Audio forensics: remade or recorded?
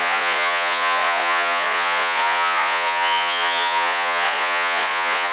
remade